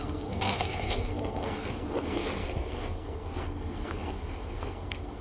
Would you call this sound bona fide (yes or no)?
no